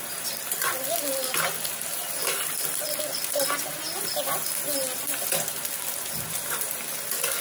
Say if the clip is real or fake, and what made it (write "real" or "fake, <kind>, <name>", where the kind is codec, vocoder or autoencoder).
fake, vocoder, BigVGAN v2